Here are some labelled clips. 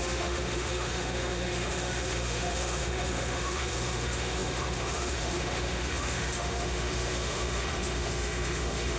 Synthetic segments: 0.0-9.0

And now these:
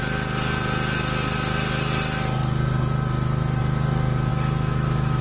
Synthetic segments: 4.3-5.2

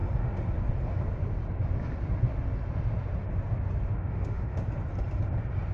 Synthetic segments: 3.9-4.6

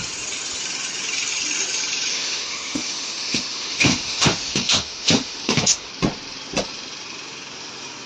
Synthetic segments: 2.1-5.9

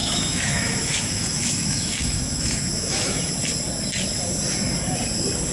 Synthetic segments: 0.0-3.3